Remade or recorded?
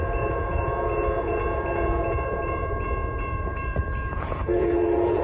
remade